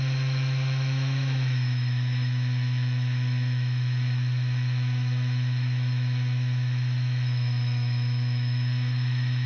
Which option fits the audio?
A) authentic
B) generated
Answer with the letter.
B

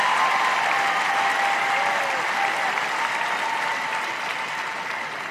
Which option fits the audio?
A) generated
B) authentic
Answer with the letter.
A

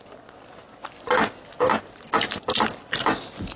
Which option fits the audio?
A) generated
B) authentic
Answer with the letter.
B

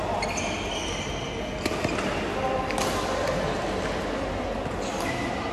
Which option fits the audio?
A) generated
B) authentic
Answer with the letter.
B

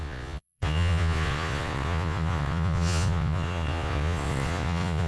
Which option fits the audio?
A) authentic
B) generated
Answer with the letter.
B